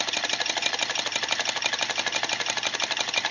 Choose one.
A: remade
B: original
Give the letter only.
B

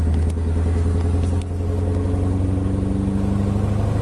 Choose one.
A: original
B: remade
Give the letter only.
A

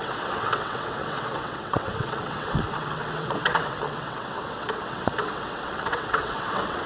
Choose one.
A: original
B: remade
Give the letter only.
B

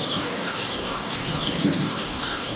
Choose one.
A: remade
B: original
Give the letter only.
A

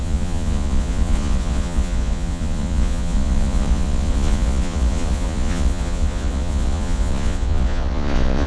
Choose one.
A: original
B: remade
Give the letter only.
B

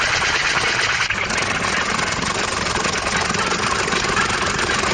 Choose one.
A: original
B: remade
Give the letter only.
A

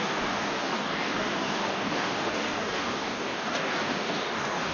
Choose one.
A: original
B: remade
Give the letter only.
B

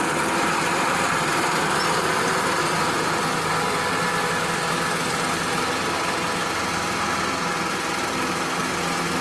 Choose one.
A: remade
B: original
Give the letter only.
B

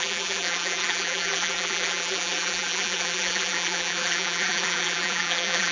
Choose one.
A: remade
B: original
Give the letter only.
A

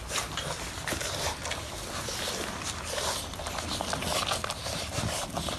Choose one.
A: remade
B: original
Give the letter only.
B